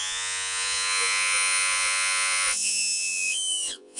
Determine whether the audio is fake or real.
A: fake